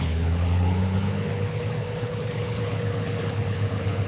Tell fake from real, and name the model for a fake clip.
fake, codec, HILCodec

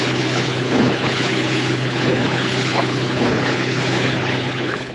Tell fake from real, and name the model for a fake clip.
fake, codec, HILCodec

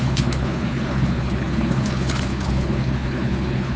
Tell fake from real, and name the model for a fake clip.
fake, codec, HILCodec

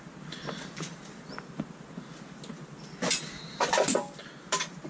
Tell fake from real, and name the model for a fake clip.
real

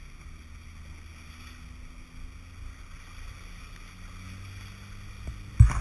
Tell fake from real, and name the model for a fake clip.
real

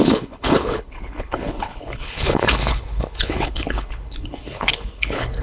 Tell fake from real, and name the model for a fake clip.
fake, codec, HILCodec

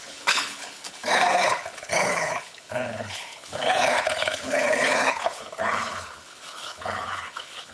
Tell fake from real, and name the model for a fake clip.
fake, codec, HILCodec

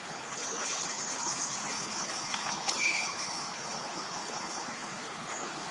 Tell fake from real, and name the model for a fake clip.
fake, codec, HILCodec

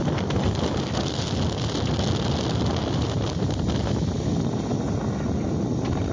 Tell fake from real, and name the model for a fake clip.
real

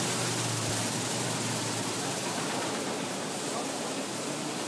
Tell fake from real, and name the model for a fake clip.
real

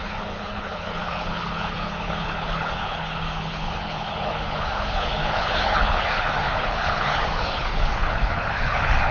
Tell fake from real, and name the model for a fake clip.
fake, codec, HILCodec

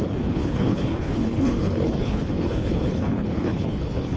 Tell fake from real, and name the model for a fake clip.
fake, codec, HILCodec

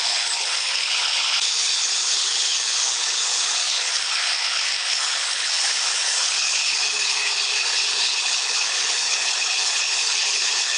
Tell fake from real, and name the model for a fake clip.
fake, codec, HILCodec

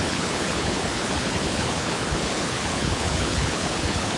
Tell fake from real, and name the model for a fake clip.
fake, codec, HILCodec